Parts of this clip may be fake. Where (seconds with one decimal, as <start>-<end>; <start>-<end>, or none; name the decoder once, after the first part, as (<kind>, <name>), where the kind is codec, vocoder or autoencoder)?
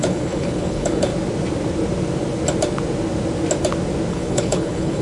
0.0-1.1 (codec, HILCodec); 4.1-5.0